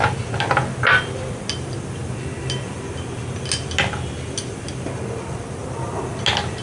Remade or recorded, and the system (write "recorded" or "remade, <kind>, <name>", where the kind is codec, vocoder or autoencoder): recorded